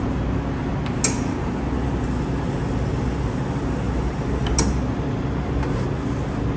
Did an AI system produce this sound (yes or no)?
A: no